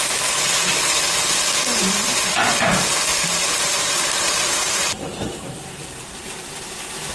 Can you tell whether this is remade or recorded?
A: remade